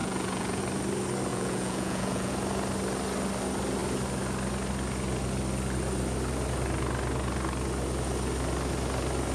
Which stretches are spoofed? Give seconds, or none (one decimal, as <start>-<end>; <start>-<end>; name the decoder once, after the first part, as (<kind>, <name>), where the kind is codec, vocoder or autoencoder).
0.0-0.6 (vocoder, Vocos); 1.3-2.3